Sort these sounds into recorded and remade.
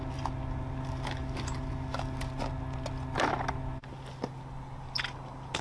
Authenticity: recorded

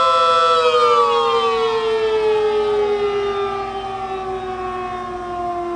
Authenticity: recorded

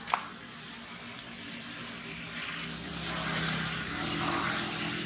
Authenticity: recorded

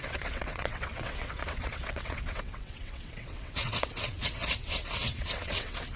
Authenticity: remade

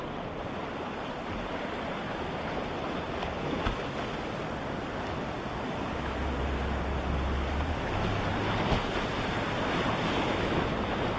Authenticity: recorded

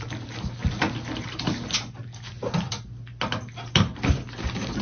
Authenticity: recorded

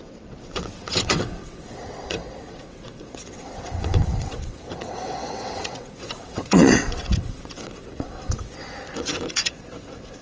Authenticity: remade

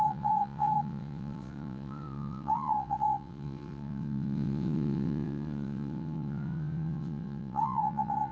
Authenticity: remade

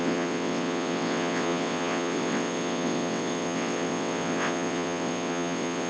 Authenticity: remade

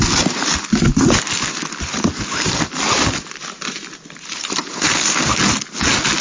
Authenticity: recorded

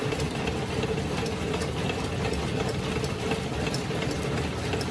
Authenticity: recorded